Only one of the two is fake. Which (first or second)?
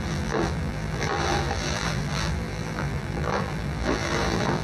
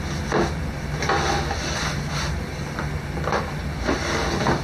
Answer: first